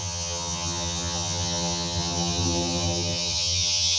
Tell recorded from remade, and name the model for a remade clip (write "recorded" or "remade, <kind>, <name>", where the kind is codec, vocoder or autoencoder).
remade, vocoder, HiFi-GAN